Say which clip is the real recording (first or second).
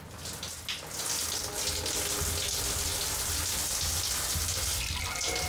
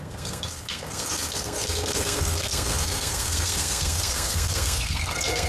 first